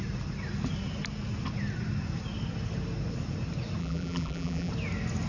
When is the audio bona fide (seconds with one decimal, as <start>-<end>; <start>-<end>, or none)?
0.0-3.8; 4.7-5.3